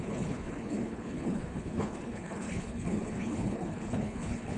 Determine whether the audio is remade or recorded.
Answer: remade